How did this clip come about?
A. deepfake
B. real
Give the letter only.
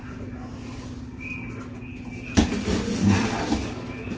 B